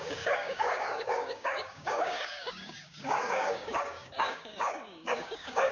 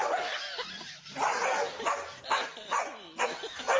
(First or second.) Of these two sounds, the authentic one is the second